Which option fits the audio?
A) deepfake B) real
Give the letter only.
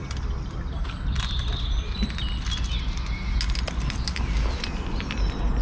B